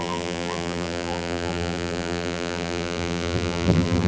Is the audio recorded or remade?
remade